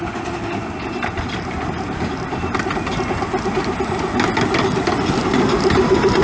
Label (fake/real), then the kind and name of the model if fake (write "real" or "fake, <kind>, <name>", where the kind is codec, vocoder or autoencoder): real